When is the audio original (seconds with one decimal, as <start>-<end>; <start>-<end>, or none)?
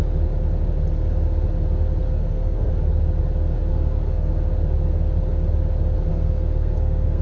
0.0-2.0; 2.7-3.7; 4.3-6.1